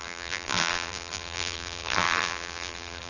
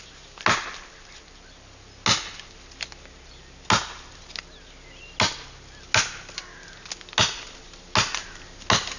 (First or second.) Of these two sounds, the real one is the second